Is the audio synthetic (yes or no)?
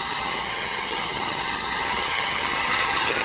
yes